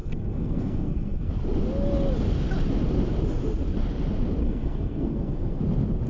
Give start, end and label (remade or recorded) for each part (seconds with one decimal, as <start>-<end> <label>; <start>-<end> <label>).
0.0-1.3 remade; 1.3-4.4 recorded; 4.4-5.6 remade; 5.6-6.1 recorded